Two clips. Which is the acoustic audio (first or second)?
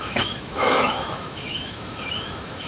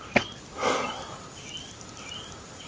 second